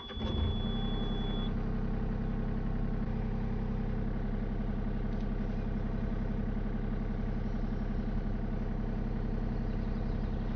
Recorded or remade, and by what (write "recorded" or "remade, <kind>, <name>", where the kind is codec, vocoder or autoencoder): recorded